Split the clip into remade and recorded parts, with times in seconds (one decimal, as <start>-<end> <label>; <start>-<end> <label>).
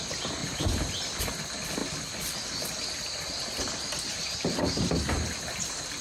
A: 0.0-6.0 recorded